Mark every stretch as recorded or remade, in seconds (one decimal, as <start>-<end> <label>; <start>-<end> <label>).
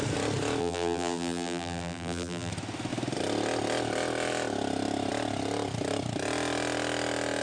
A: 0.0-0.6 recorded; 0.6-2.5 remade; 2.5-7.4 recorded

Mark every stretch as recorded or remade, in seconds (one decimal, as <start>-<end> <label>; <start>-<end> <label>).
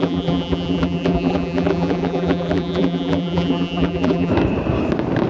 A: 0.0-4.3 remade; 4.3-5.3 recorded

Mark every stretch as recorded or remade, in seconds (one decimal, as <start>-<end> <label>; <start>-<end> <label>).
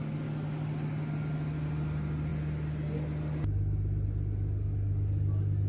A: 0.0-5.7 recorded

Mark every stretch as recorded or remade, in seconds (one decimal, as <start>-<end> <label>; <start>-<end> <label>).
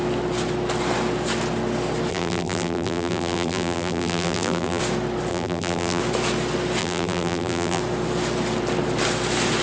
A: 0.0-2.1 recorded; 2.1-4.8 remade; 4.8-5.3 recorded; 5.3-6.0 remade; 6.0-6.8 recorded; 6.8-7.8 remade; 7.8-9.6 recorded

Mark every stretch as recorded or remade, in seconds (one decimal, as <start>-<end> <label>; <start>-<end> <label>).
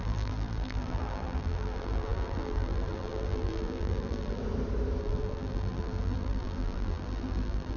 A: 0.0-4.4 remade; 4.4-5.0 recorded; 5.0-7.8 remade